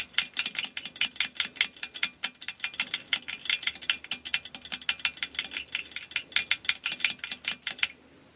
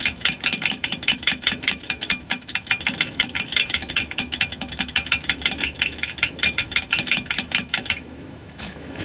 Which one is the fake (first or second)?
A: second